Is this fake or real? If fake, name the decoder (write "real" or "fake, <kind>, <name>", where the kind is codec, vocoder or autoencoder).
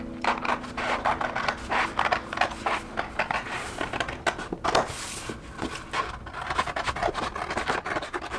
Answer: real